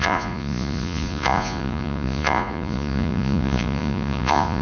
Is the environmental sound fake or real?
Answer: fake